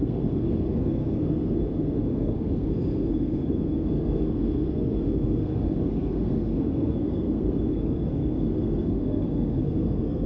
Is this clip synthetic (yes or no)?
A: yes